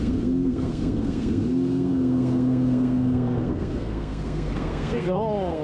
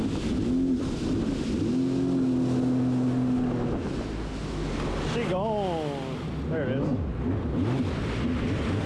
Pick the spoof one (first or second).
first